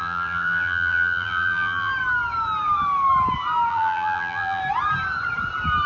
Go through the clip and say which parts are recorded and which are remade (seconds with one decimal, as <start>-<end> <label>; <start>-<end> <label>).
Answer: 0.0-1.9 remade; 1.9-3.7 recorded; 3.7-4.6 remade; 4.6-5.9 recorded